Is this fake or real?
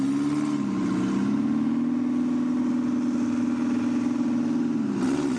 real